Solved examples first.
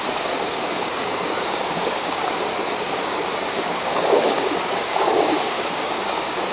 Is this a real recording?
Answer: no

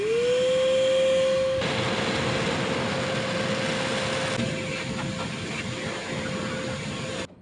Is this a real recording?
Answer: yes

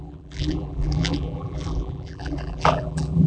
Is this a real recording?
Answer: no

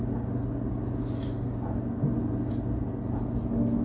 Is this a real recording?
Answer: yes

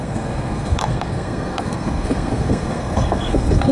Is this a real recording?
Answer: no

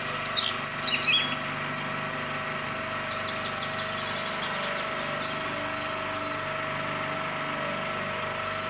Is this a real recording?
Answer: yes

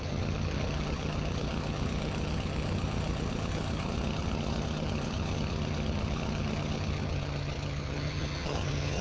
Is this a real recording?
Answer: no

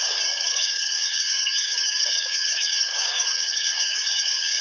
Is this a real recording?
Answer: no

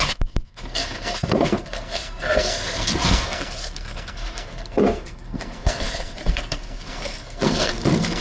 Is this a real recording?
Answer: no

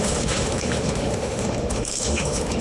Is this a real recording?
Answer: no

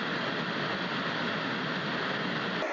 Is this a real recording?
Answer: yes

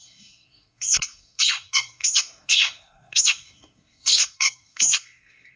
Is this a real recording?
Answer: no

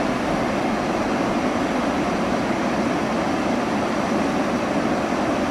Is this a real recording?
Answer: yes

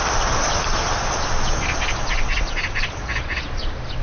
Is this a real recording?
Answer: yes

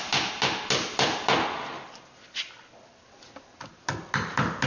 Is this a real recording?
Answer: yes